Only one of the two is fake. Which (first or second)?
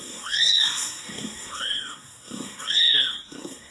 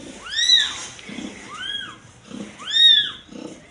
first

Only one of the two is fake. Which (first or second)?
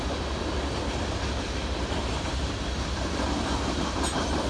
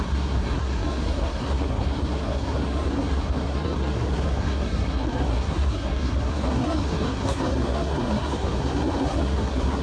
second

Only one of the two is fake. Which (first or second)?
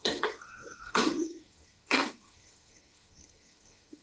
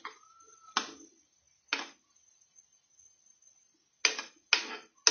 first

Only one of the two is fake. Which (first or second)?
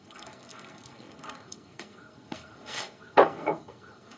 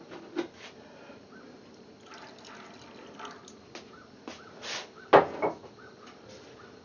first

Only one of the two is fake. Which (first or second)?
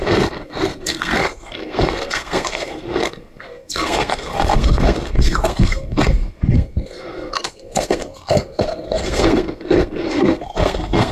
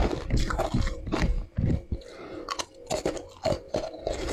first